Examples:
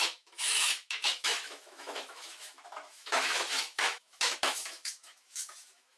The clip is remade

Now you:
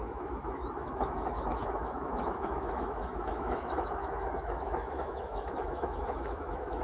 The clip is remade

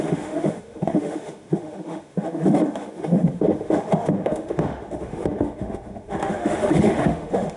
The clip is remade